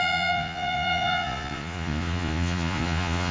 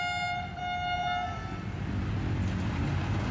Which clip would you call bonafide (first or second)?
second